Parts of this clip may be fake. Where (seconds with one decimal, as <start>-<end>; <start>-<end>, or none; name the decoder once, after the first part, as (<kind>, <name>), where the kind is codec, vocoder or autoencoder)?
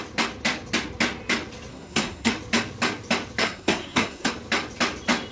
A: 1.7-2.3 (codec, SNAC); 3.4-4.3